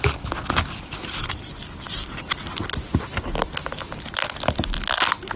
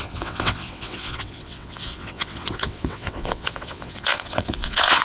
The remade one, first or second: second